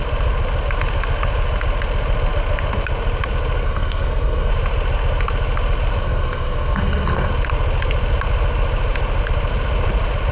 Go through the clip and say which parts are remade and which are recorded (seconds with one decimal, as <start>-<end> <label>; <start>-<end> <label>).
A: 0.0-3.6 recorded; 3.6-4.5 remade; 4.5-6.0 recorded; 6.0-7.3 remade; 7.3-10.3 recorded